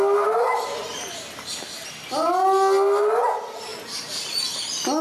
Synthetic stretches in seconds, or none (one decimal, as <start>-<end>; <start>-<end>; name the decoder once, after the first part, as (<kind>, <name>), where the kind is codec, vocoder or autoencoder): 0.8-1.5 (vocoder, BigVGAN v2)